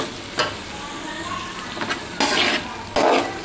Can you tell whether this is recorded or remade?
recorded